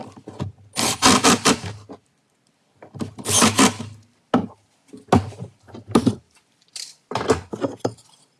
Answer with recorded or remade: recorded